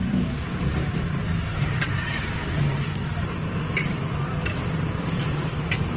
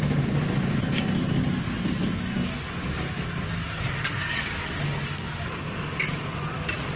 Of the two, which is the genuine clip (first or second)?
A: second